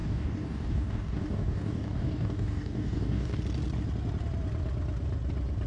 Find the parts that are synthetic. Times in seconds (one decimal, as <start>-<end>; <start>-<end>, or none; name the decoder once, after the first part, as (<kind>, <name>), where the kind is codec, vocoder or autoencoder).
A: 0.0-3.4 (codec, DAC)